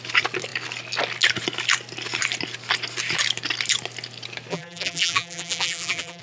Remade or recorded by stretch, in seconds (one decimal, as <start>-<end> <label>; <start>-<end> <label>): 0.0-4.5 recorded; 4.5-6.2 remade